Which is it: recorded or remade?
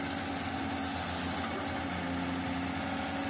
recorded